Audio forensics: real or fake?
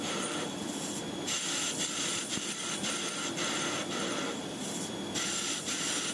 fake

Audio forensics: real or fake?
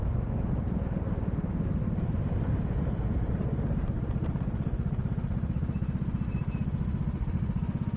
real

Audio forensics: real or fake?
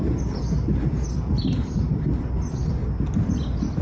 real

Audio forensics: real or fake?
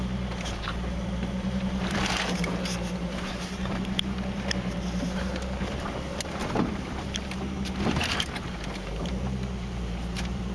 fake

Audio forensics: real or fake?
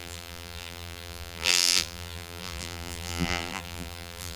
fake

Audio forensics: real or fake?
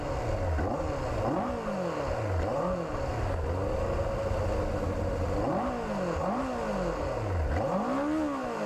real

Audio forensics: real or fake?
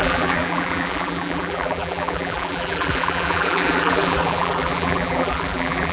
fake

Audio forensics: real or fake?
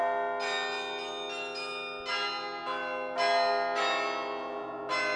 real